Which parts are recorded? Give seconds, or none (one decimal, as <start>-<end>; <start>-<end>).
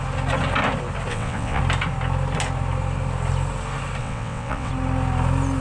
0.0-1.1; 1.6-4.0; 4.7-5.6